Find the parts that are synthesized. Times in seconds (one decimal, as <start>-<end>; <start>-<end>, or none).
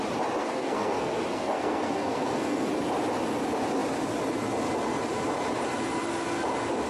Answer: 0.4-2.7